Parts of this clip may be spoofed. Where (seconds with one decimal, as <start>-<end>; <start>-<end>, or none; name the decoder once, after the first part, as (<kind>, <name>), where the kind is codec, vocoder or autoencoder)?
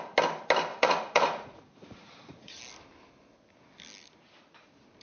0.7-2.6 (vocoder, Vocos)